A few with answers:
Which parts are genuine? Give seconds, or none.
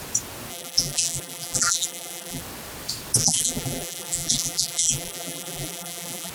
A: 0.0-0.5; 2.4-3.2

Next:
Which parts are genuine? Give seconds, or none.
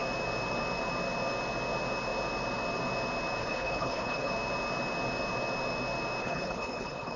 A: 0.0-3.4; 4.3-6.2